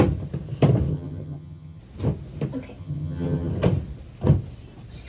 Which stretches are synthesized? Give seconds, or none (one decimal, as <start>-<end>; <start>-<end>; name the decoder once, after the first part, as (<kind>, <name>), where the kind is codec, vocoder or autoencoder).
0.9-1.8 (vocoder, HiFi-GAN); 2.8-3.5